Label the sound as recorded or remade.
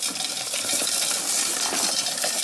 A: recorded